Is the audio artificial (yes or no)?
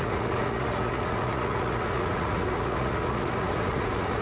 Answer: yes